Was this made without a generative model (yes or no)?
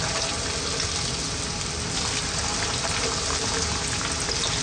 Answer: yes